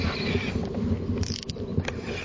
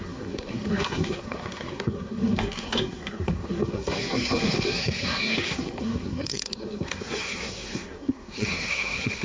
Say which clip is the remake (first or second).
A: second